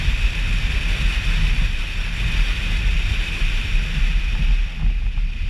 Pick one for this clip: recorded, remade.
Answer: recorded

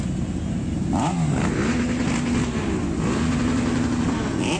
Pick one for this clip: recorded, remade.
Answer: recorded